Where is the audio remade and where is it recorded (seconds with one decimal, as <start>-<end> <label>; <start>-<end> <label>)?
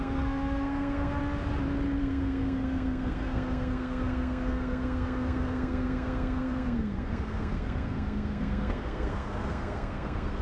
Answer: 0.0-1.2 remade; 1.2-2.0 recorded; 2.0-10.4 remade